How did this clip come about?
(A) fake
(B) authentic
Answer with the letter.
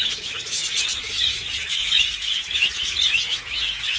A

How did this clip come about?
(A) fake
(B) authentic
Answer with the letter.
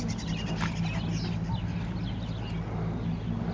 B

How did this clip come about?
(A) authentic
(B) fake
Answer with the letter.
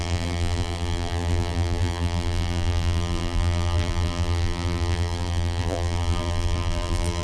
B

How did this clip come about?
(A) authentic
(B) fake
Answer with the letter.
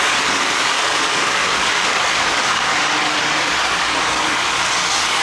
B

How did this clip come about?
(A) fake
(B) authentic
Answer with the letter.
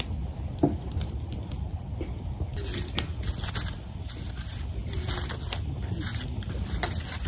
B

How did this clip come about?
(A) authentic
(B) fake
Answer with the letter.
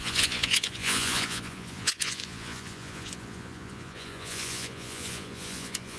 B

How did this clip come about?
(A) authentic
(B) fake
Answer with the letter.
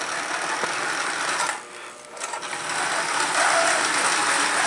A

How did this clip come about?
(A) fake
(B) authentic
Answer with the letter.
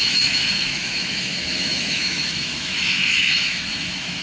A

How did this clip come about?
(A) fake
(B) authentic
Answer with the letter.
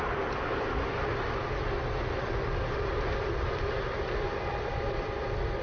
B